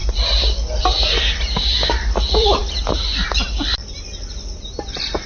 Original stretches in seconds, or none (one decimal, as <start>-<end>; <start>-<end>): 0.0-5.3

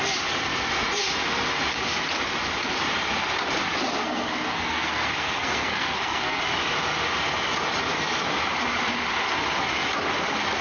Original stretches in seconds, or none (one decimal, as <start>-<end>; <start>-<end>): 0.0-4.0; 6.4-10.6

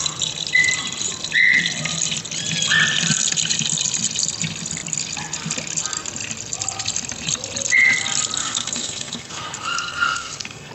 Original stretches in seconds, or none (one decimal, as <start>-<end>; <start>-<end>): 0.0-8.4

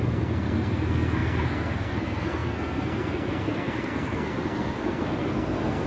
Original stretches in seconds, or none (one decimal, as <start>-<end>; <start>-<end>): none

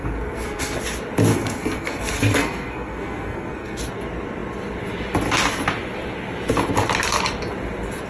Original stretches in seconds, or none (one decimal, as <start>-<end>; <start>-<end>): 0.8-1.3; 3.8-8.1

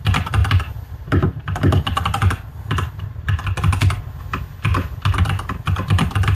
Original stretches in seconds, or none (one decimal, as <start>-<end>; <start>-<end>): 0.0-6.4

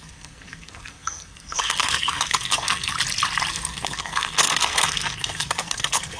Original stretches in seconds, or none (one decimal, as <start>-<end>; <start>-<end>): 2.9-3.5